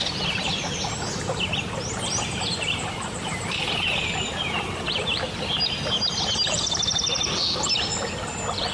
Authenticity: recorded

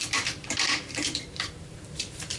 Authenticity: remade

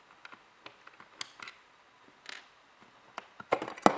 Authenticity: recorded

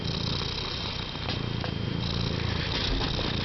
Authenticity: recorded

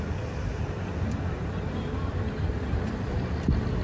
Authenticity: remade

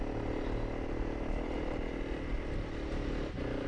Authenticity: recorded